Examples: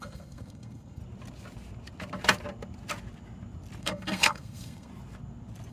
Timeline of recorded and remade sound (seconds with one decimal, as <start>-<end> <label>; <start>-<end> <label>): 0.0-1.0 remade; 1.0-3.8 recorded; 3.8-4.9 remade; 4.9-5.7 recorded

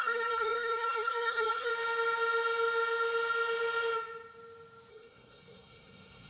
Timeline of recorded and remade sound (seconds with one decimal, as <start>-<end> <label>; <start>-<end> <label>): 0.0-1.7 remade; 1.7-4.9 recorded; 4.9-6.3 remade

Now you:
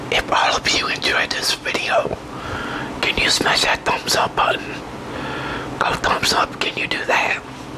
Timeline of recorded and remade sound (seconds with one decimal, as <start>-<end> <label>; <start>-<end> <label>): 0.0-1.1 recorded; 1.1-1.7 remade; 1.7-7.8 recorded

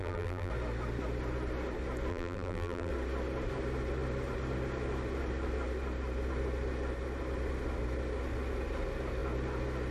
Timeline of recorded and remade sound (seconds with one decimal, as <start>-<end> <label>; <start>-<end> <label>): 0.0-0.5 remade; 0.5-2.1 recorded; 2.1-2.9 remade; 2.9-9.9 recorded

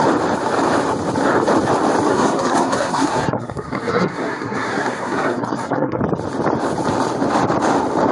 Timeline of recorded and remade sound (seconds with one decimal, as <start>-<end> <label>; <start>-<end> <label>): 0.0-2.1 recorded; 2.1-6.0 remade; 6.0-8.1 recorded